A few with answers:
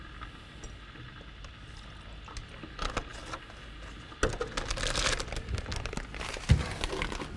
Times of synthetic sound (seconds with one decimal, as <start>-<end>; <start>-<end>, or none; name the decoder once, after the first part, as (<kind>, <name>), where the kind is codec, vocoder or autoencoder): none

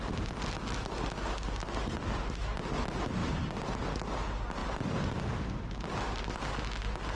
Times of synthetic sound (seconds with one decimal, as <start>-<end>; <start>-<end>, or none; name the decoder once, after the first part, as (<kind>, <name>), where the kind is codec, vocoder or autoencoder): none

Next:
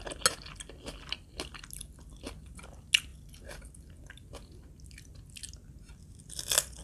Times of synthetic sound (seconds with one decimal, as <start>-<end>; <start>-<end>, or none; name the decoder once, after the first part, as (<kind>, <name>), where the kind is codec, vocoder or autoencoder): none

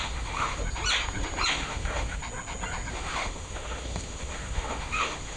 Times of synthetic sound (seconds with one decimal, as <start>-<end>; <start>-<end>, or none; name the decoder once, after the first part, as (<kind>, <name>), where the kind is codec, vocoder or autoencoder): 0.0-0.6 (autoencoder, DAC-VAE); 1.5-2.2; 2.9-5.4